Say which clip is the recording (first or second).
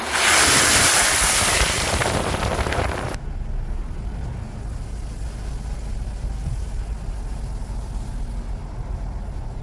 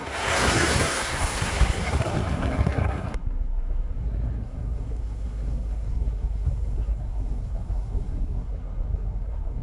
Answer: first